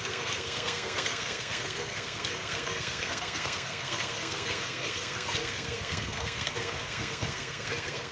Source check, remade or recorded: remade